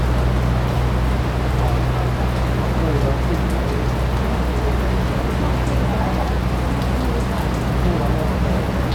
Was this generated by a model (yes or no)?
no